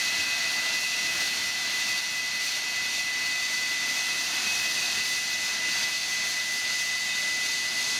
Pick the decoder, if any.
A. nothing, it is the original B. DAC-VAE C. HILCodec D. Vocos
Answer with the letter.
A